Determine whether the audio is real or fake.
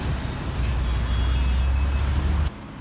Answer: real